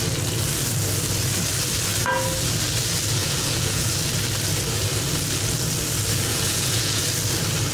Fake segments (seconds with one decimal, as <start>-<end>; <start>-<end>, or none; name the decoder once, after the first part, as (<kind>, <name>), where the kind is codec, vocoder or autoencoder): 3.2-3.9 (vocoder, Vocos); 6.3-7.0